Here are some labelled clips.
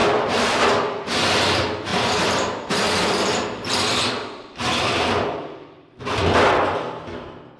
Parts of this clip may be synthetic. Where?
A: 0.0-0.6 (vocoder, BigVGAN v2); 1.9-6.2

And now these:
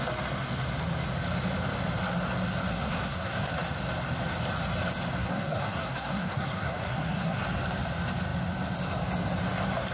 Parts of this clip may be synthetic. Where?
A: 2.7-3.5 (codec, SNAC); 5.2-7.4

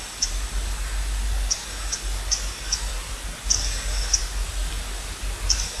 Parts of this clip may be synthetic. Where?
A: none

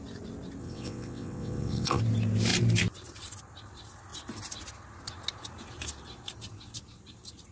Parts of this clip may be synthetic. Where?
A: 0.6-2.0 (vocoder, WaveNeXt)